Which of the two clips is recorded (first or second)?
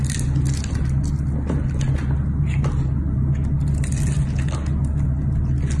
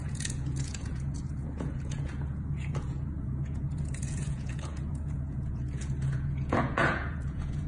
first